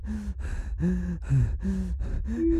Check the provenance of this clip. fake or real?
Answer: real